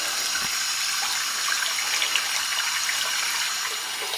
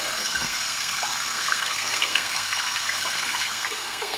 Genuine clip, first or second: first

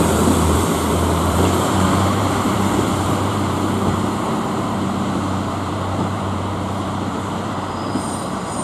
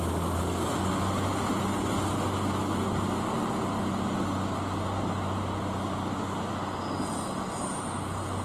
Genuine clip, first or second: second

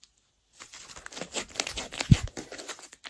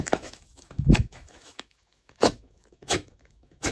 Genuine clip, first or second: first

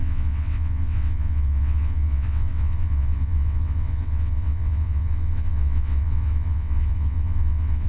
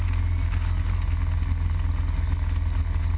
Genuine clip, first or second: second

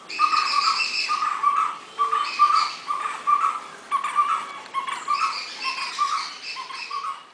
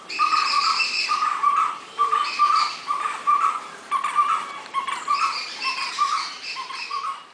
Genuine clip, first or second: first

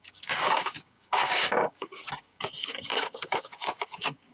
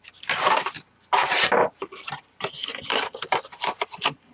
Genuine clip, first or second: second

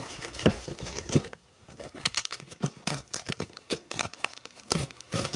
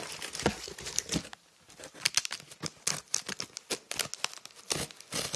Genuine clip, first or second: second